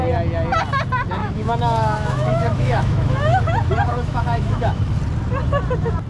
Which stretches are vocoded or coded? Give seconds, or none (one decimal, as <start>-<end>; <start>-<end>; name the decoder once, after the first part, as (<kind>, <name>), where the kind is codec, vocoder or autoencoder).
1.2-3.4 (autoencoder, DAC-VAE); 3.9-4.8